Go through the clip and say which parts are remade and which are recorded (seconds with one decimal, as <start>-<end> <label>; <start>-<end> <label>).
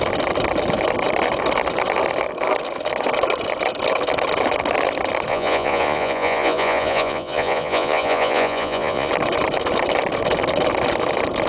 0.0-5.3 recorded; 5.3-9.1 remade; 9.1-11.5 recorded